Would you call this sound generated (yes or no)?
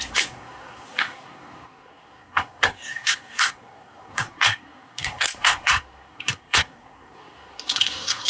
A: yes